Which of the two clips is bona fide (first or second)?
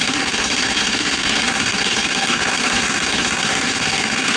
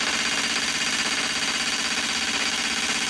second